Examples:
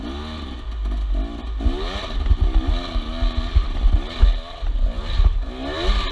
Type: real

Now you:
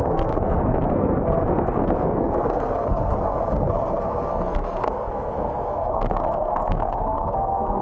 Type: fake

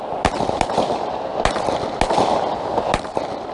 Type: real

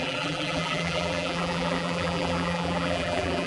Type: fake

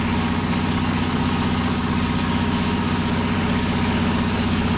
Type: fake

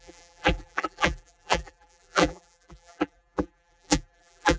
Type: fake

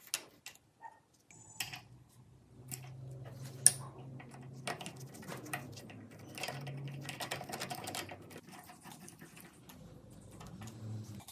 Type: real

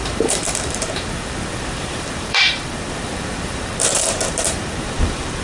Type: fake